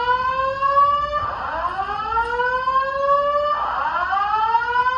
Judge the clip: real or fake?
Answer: real